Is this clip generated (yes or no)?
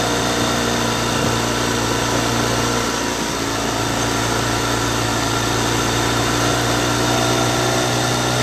no